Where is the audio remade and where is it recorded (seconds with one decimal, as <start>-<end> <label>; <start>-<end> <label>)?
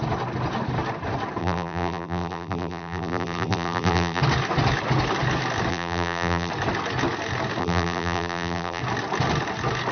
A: 0.0-1.4 recorded; 1.4-4.2 remade; 4.2-5.7 recorded; 5.7-6.5 remade; 6.5-7.6 recorded; 7.6-8.8 remade; 8.8-9.9 recorded